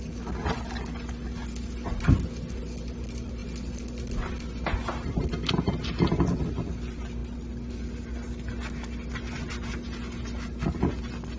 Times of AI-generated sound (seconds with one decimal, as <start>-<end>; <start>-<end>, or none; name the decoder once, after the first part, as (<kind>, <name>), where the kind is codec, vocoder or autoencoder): none